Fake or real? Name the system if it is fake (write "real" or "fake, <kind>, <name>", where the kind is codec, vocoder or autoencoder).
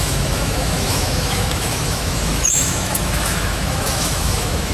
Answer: fake, autoencoder, DAC-VAE